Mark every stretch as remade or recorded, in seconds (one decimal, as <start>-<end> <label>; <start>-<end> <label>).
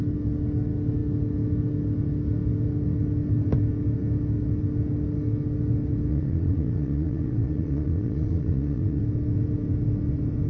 0.0-6.1 recorded; 6.1-9.0 remade; 9.0-10.5 recorded